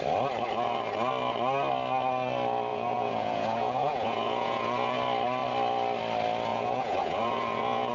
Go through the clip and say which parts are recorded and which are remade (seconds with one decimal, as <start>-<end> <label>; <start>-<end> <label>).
0.0-2.7 recorded; 2.7-5.0 remade; 5.0-6.5 recorded; 6.5-7.9 remade